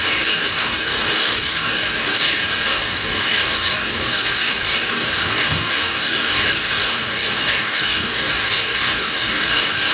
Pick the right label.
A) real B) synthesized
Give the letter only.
B